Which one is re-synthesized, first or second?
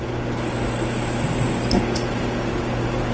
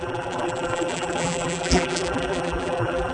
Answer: second